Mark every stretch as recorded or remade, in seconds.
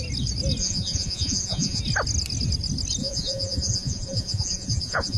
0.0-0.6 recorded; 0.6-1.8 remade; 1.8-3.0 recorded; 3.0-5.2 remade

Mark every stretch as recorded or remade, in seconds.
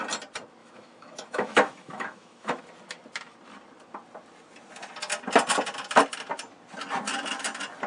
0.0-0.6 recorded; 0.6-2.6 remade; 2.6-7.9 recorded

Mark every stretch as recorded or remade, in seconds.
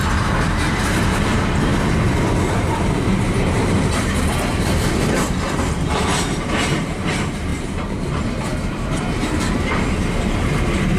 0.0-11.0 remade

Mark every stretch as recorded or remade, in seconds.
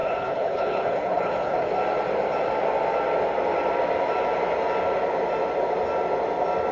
0.0-1.7 remade; 1.7-6.7 recorded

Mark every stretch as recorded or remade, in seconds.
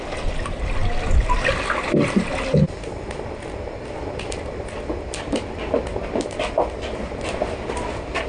0.0-8.3 recorded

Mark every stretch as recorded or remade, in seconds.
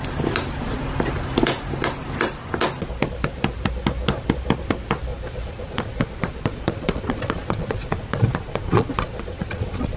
0.0-5.1 recorded; 5.1-10.0 remade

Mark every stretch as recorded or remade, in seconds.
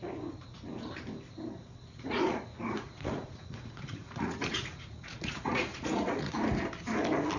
0.0-1.9 recorded; 1.9-6.3 remade; 6.3-7.4 recorded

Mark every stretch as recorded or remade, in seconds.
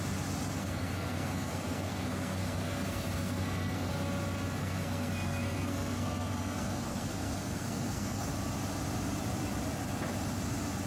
0.0-0.6 recorded; 0.6-3.9 remade; 3.9-4.6 recorded; 4.6-8.3 remade; 8.3-10.9 recorded